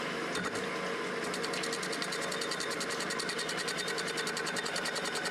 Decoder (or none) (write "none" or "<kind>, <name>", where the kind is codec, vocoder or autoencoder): none